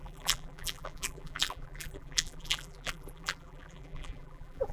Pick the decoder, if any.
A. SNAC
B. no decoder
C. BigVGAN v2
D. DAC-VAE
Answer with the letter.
C